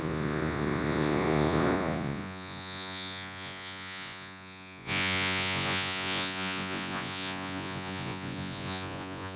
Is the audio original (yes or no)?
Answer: no